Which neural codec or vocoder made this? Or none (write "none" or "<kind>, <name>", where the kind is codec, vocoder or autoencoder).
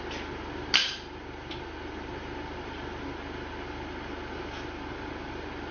none